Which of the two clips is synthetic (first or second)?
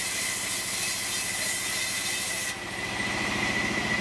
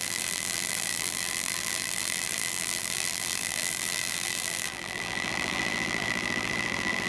second